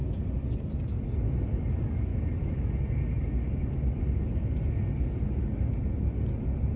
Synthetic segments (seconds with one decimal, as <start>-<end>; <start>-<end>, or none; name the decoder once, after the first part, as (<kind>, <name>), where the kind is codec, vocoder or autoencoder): 2.1-2.7 (autoencoder, DAC-VAE)